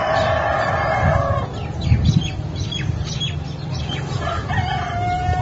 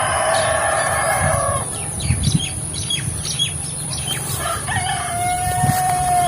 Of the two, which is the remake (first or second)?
second